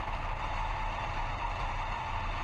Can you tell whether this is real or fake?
real